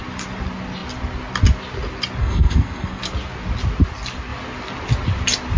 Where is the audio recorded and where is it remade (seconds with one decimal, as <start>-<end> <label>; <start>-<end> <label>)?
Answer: 0.0-2.2 recorded; 2.2-3.0 remade; 3.0-5.6 recorded